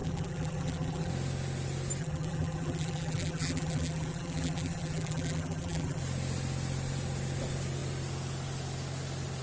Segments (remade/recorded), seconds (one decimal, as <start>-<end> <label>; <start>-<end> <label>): 0.0-1.1 remade; 1.1-2.0 recorded; 2.0-6.0 remade; 6.0-9.4 recorded